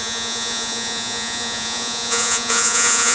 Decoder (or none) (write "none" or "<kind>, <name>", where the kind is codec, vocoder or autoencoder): vocoder, Vocos